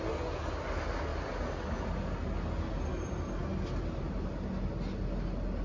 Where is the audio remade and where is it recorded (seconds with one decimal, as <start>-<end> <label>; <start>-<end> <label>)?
0.0-5.6 recorded